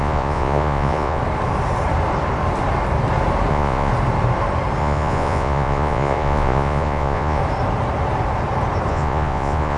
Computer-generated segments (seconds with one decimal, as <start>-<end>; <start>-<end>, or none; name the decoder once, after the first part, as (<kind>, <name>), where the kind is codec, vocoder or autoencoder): 0.0-1.2 (vocoder, Vocos); 3.5-3.9; 4.8-7.4; 8.9-9.8